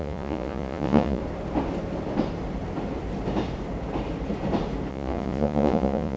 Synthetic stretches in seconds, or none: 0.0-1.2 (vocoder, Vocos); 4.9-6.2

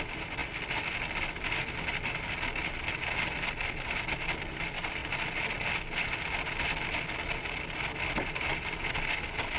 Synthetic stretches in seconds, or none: none

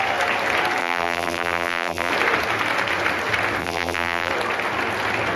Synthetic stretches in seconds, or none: 0.8-2.1 (vocoder, BigVGAN v2); 3.6-4.3

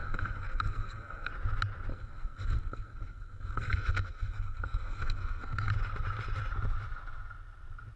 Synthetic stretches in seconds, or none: 0.0-1.3 (codec, SNAC); 1.9-5.7

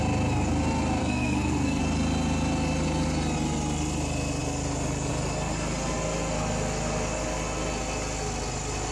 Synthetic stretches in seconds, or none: 1.0-1.8 (codec, SNAC)